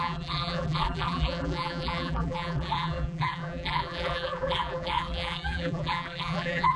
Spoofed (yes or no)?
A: yes